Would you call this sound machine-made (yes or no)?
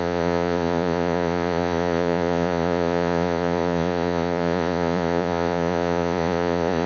yes